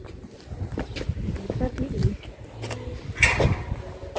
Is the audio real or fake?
real